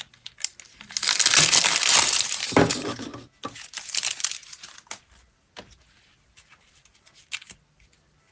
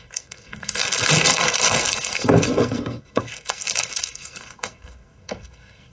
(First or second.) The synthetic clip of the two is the second